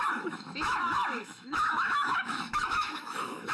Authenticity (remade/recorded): remade